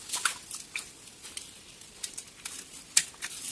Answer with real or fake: real